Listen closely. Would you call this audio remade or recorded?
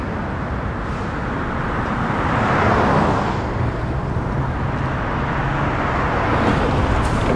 recorded